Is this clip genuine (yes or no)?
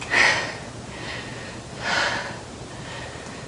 yes